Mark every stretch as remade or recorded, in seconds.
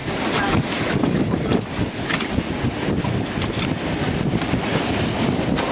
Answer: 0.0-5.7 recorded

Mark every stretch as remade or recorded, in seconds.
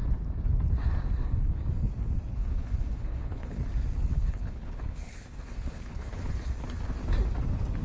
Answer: 0.0-2.3 recorded; 2.3-3.6 remade; 3.6-4.1 recorded; 4.1-6.5 remade; 6.5-7.8 recorded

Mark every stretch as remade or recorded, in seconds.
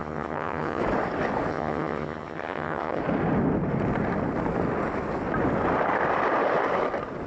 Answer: 0.0-0.8 remade; 0.8-1.5 recorded; 1.5-3.0 remade; 3.0-7.3 recorded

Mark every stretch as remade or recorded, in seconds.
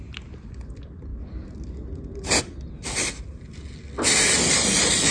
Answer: 0.0-5.1 recorded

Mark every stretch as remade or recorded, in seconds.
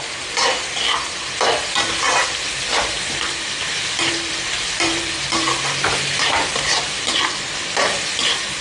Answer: 0.0-2.7 recorded; 2.7-7.6 remade; 7.6-8.6 recorded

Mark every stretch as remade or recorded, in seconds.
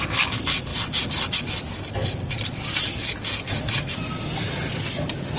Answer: 0.0-5.4 recorded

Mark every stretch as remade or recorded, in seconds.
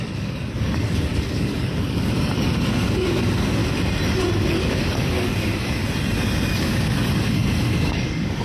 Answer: 0.0-3.6 remade; 3.6-4.5 recorded; 4.5-5.8 remade; 5.8-6.5 recorded; 6.5-8.4 remade